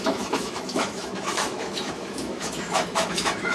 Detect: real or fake fake